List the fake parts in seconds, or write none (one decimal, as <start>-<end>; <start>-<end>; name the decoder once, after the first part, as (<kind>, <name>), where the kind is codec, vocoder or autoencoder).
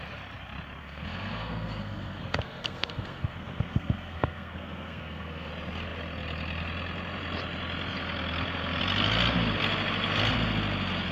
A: 0.8-5.5 (codec, SNAC)